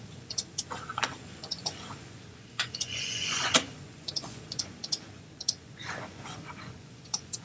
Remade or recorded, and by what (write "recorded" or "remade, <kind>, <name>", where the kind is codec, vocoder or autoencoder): remade, vocoder, Vocos